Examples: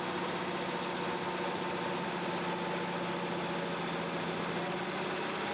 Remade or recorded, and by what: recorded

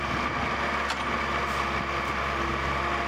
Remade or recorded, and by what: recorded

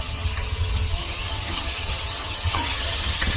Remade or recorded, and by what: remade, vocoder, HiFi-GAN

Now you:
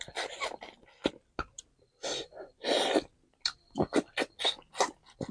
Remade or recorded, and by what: recorded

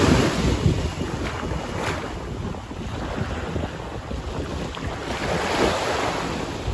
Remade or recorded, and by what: recorded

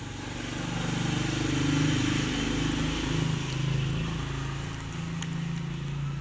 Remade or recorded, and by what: recorded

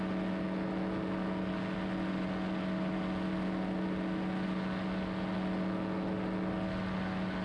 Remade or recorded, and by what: recorded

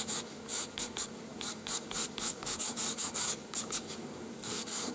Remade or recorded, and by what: remade, codec, DAC